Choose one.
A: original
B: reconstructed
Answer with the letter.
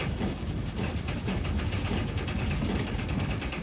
B